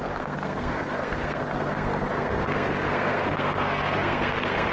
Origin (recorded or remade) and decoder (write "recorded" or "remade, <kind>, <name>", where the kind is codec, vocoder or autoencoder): remade, codec, SNAC